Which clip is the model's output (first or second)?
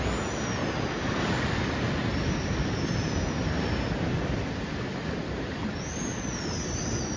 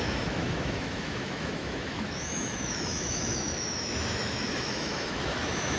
second